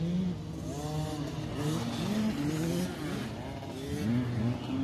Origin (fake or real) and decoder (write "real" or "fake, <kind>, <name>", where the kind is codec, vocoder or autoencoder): real